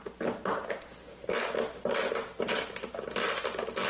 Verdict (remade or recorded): recorded